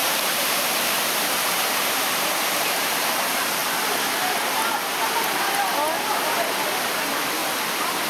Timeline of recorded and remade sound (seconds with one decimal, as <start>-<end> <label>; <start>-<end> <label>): 0.0-3.6 remade; 3.6-6.8 recorded; 6.8-7.4 remade; 7.4-8.1 recorded